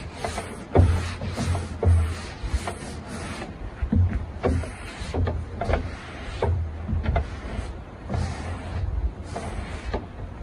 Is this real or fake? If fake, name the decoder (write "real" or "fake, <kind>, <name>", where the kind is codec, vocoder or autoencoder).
fake, vocoder, BigVGAN v2